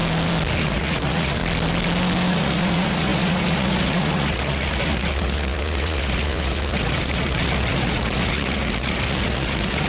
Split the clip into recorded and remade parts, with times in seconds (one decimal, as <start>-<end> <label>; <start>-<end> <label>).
0.0-0.6 recorded; 0.6-1.4 remade; 1.4-2.3 recorded; 2.3-9.9 remade